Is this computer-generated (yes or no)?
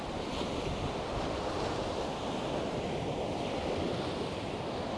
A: no